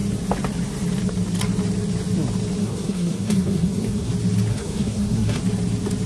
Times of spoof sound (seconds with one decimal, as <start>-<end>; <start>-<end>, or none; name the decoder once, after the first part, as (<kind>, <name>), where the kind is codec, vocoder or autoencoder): 2.6-4.1 (codec, SNAC); 4.5-5.4